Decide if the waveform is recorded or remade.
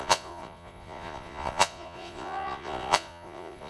remade